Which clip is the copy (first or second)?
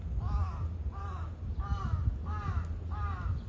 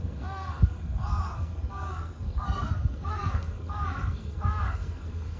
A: second